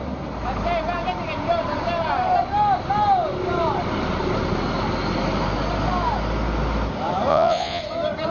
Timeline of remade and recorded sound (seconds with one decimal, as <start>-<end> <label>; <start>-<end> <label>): 0.0-7.3 recorded; 7.3-7.8 remade; 7.8-8.3 recorded